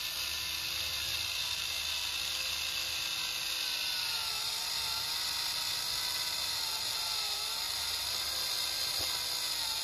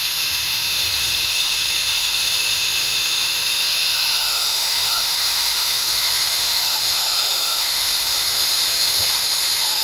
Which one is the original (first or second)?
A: first